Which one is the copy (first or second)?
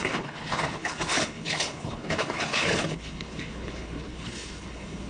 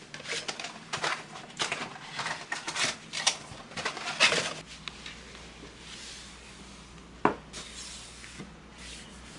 first